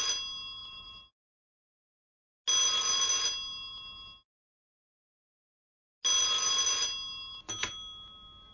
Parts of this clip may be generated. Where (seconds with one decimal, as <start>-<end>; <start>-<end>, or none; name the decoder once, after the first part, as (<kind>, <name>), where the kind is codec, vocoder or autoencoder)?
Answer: 0.6-1.5 (vocoder, BigVGAN v2)

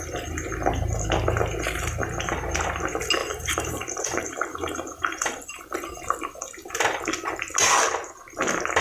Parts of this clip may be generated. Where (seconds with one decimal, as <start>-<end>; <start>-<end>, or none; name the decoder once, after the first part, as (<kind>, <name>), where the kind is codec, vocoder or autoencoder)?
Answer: 3.2-5.6 (vocoder, BigVGAN v2)

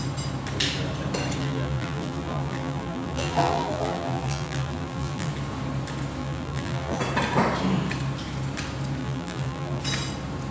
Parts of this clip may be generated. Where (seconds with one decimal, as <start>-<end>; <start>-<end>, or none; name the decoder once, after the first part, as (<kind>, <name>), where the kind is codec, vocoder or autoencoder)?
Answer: 1.4-5.3 (vocoder, BigVGAN v2); 6.2-7.0; 9.0-9.8

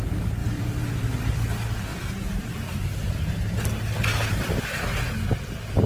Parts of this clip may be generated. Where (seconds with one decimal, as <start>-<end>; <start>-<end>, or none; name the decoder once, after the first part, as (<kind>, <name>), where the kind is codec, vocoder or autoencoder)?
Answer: 0.4-1.3 (vocoder, BigVGAN v2); 1.9-2.5; 4.1-4.6